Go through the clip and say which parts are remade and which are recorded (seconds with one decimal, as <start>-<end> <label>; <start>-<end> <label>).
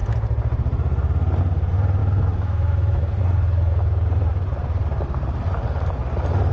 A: 0.0-2.0 recorded; 2.0-3.2 remade; 3.2-6.5 recorded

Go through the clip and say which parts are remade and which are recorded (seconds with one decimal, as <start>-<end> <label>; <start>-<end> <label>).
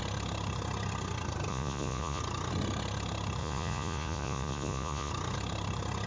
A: 0.0-1.5 recorded; 1.5-2.2 remade; 2.2-3.4 recorded; 3.4-5.1 remade; 5.1-6.1 recorded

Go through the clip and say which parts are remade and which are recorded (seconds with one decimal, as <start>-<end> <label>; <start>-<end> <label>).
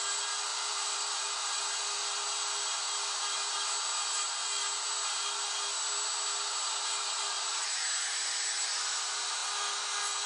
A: 0.0-0.5 recorded; 0.5-1.6 remade; 1.6-10.3 recorded